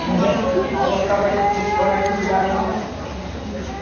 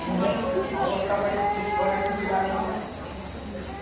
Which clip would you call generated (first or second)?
first